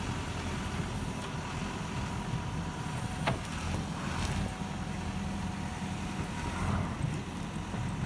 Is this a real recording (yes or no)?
yes